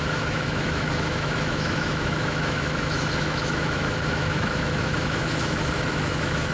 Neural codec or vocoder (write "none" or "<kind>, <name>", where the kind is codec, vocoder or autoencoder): autoencoder, DAC-VAE